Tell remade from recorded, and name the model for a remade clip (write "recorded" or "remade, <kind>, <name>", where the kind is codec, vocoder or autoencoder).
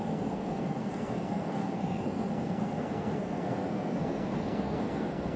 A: remade, codec, SNAC